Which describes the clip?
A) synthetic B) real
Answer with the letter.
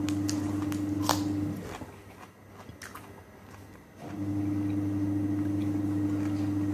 B